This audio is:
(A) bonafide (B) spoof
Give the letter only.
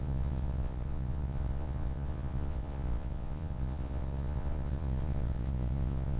B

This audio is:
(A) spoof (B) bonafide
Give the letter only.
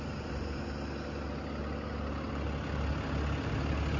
B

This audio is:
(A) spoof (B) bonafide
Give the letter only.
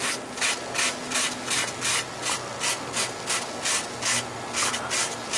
B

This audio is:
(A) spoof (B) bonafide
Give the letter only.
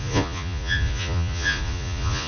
A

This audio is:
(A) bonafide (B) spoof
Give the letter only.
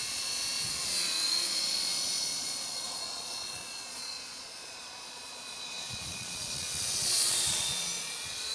B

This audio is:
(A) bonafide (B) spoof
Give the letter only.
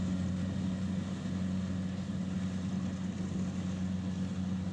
A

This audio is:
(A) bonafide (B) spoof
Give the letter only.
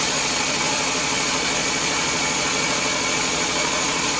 B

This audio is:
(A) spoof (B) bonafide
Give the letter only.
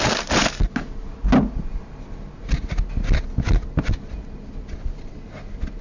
B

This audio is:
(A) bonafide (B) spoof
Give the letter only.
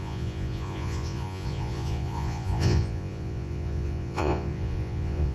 B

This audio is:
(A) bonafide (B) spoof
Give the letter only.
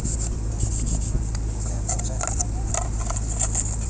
A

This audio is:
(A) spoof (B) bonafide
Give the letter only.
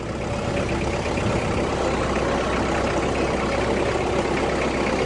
B